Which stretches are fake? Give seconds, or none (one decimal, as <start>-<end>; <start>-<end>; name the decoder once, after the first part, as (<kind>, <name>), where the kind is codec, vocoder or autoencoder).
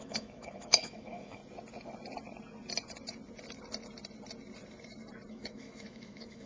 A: 0.0-1.4 (autoencoder, DAC-VAE); 5.3-6.5